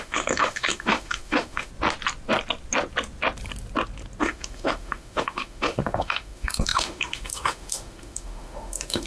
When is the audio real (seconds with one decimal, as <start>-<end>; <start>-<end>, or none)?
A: 1.7-4.2